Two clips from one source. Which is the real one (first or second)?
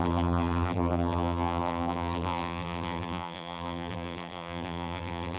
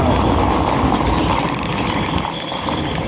second